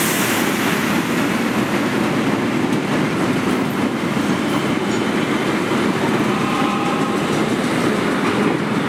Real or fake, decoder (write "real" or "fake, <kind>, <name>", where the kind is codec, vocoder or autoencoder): real